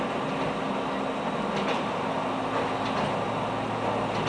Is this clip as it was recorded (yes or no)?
yes